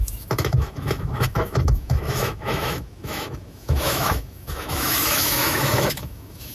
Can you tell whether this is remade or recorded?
remade